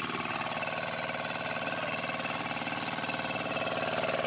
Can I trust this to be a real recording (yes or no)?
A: yes